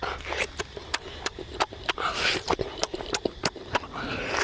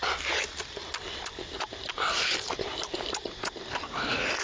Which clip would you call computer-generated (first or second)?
first